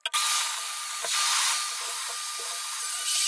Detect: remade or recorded recorded